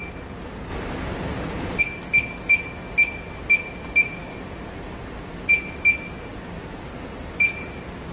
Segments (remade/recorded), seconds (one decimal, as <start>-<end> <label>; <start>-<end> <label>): 0.0-0.7 recorded; 0.7-1.8 remade; 1.8-4.2 recorded; 4.2-5.6 remade; 5.6-6.3 recorded; 6.3-8.1 remade